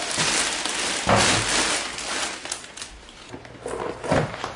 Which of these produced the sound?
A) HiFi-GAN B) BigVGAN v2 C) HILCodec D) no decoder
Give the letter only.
D